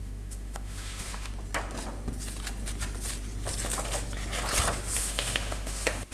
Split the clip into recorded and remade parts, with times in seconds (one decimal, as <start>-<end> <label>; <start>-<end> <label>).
0.0-1.3 remade; 1.3-5.0 recorded; 5.0-6.1 remade